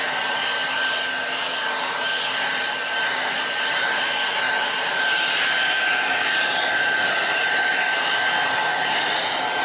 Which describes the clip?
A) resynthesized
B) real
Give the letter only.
B